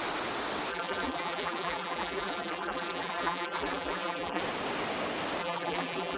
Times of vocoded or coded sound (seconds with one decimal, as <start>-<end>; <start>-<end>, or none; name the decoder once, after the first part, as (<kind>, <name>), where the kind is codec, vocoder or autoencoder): 0.7-4.4 (vocoder, BigVGAN v2); 5.4-6.2